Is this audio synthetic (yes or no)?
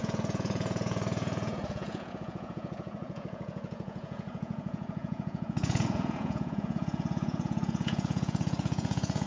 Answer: yes